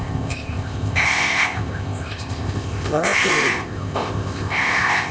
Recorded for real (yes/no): no